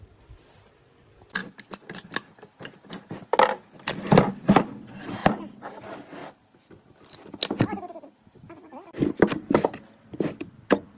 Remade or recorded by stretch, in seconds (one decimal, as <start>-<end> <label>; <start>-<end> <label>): 0.0-5.2 recorded; 5.2-5.8 remade; 5.8-6.2 recorded; 6.2-10.4 remade; 10.4-11.0 recorded